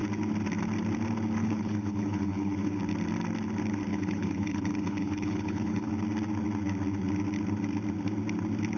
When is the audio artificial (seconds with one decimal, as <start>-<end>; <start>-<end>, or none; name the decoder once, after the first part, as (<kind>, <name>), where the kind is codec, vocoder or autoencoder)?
1.4-2.8 (codec, HILCodec); 3.9-5.9